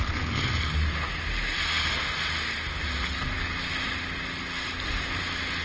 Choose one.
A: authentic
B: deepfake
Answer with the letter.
A